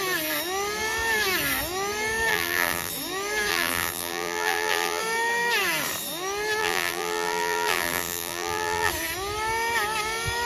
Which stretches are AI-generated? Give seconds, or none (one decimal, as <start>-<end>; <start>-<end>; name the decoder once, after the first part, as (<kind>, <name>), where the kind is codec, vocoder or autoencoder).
2.3-2.9 (vocoder, BigVGAN v2); 3.5-5.0; 6.6-8.9